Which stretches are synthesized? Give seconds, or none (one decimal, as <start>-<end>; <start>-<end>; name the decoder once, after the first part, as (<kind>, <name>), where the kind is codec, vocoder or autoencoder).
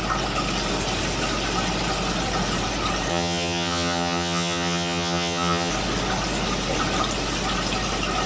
3.1-5.7 (vocoder, HiFi-GAN)